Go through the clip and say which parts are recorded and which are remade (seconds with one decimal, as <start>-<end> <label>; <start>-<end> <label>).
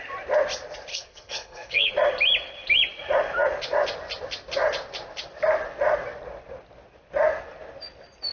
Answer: 0.0-0.9 recorded; 0.9-1.9 remade; 1.9-8.3 recorded